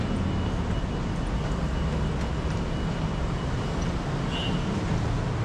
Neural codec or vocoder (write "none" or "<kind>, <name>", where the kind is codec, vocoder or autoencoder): none